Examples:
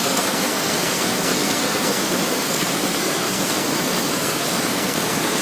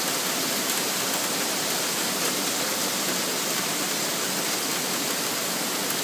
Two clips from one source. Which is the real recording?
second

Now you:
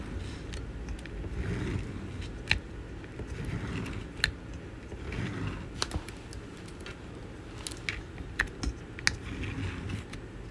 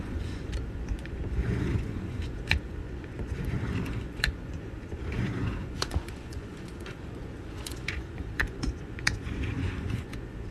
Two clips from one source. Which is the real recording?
first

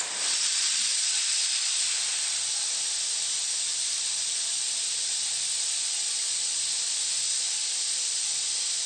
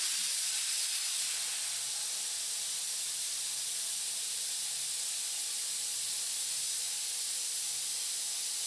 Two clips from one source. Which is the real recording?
second